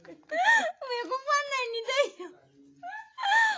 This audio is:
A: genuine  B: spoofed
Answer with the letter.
A